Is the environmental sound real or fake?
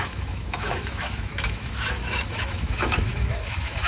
fake